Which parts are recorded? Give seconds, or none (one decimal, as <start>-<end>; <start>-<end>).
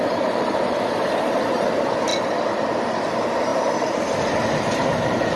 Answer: 2.1-2.8